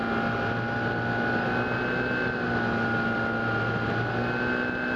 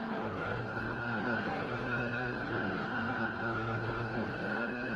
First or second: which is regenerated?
second